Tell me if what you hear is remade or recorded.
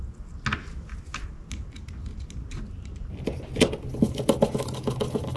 recorded